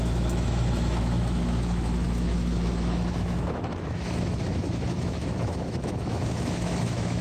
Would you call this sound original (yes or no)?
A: no